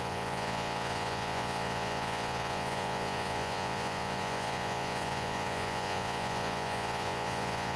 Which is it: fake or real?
fake